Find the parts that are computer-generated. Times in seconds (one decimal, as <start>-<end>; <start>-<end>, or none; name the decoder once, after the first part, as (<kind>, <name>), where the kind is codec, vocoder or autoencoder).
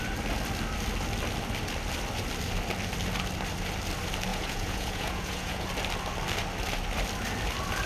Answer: 4.3-5.7 (vocoder, Vocos)